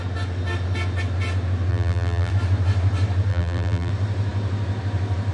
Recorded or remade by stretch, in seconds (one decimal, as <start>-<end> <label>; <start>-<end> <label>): 0.0-1.7 recorded; 1.7-2.3 remade; 2.3-3.3 recorded; 3.3-3.9 remade; 3.9-5.3 recorded